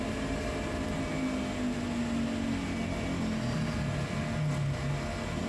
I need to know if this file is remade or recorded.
recorded